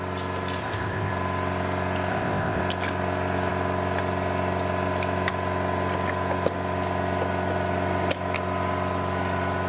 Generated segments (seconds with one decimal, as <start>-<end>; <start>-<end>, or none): 0.6-1.1; 2.1-2.6